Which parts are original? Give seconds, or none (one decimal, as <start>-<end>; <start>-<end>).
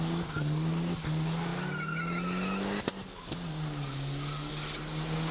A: 0.0-5.3